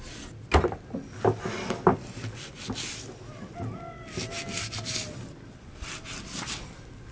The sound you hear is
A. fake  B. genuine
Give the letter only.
B